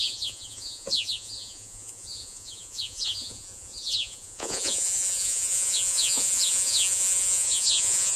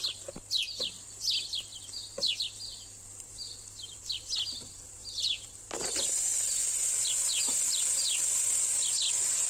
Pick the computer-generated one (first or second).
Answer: first